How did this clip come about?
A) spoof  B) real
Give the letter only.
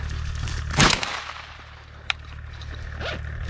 B